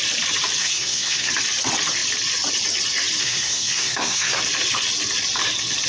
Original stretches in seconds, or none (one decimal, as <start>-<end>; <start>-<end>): 0.0-0.6; 1.3-3.2; 4.4-5.9